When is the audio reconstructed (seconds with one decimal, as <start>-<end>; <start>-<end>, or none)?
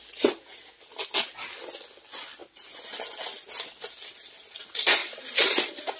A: 5.0-6.0